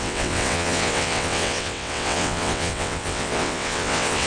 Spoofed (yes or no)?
yes